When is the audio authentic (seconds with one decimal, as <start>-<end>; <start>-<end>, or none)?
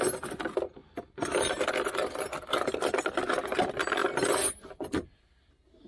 0.0-0.8; 2.0-4.0; 5.5-5.9